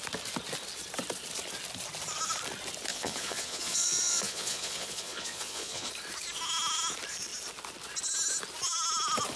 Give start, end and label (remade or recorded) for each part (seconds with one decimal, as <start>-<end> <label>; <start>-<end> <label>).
0.0-2.9 recorded; 2.9-5.9 remade; 5.9-9.4 recorded